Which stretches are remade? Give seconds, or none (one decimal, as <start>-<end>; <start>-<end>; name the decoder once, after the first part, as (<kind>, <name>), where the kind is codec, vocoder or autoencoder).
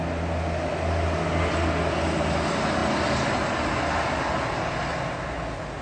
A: none